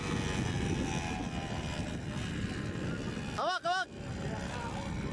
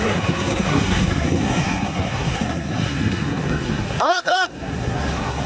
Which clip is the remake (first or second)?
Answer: second